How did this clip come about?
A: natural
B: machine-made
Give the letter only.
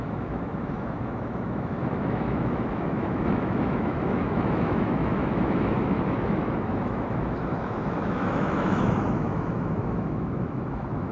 B